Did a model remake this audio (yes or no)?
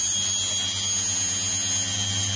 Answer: no